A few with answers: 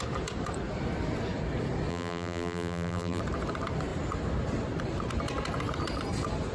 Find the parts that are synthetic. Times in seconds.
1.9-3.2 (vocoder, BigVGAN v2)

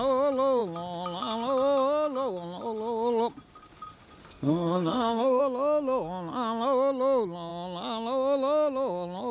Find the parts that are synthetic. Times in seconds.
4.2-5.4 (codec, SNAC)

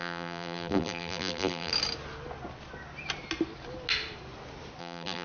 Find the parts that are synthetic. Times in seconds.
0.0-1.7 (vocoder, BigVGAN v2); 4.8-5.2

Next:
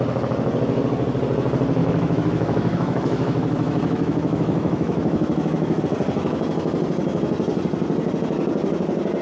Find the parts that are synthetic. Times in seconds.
1.8-5.8 (autoencoder, DAC-VAE)

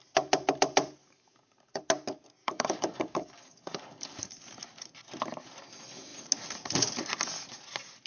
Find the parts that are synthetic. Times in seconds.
1.0-1.8 (codec, DAC); 2.4-4.2

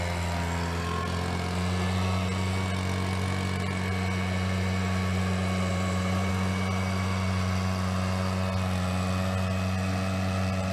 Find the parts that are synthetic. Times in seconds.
5.7-6.3 (vocoder, BigVGAN v2)

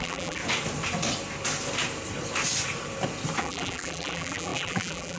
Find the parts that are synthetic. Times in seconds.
0.0-0.4 (vocoder, BigVGAN v2); 3.4-5.2